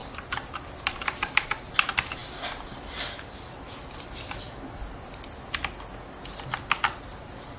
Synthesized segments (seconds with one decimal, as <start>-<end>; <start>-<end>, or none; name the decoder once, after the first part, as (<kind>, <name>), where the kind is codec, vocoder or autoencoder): 0.0-1.6 (vocoder, BigVGAN v2)